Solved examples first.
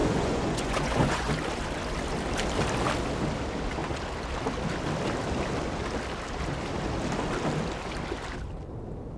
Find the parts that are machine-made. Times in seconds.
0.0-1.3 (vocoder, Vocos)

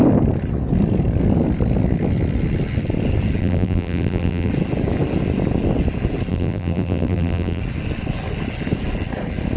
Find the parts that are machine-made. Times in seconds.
3.4-4.5 (vocoder, BigVGAN v2); 6.3-7.6

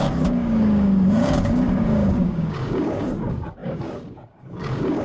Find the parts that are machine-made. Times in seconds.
0.0-5.0 (codec, DAC)

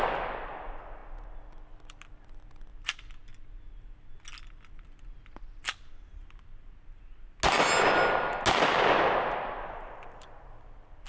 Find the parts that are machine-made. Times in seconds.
none

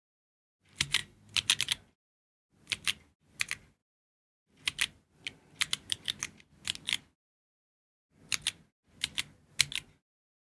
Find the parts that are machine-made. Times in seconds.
none

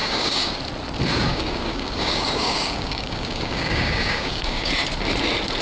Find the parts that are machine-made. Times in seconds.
0.0-0.6 (codec, DAC); 1.3-4.7

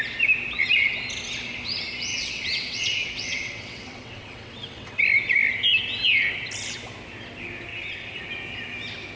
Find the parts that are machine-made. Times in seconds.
2.1-5.0 (vocoder, WaveNeXt); 7.7-8.2